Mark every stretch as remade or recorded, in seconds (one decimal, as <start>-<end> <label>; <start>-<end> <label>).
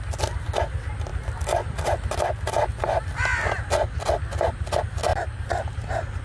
0.0-6.2 recorded